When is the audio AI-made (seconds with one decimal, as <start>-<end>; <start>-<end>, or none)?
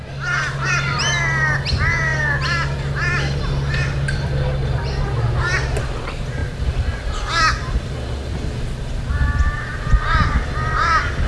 none